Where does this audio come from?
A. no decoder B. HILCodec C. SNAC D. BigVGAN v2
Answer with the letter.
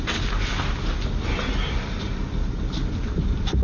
A